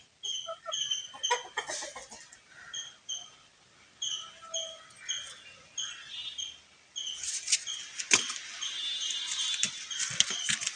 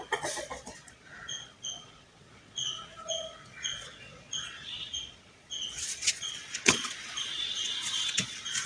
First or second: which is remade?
second